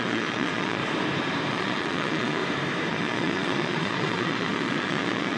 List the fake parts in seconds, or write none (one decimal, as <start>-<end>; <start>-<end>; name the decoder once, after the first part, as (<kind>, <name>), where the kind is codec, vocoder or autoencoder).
0.0-0.8 (vocoder, Vocos); 1.5-2.4; 2.9-5.4